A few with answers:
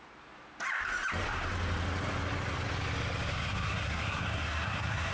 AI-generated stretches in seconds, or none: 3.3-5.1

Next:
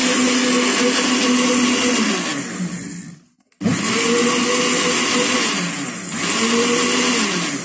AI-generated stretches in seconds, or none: none

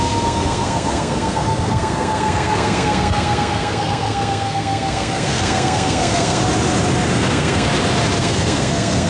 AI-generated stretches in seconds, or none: 0.0-6.4; 7.1-7.7; 8.2-9.1

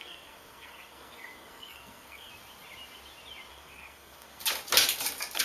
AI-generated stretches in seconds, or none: 0.0-2.3; 3.5-4.4